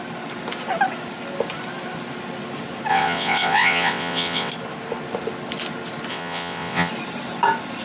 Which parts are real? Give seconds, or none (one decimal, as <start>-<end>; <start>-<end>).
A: 0.0-2.9; 4.5-6.1; 6.9-7.8